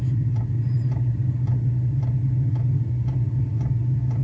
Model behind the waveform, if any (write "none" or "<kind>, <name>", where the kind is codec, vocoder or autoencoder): none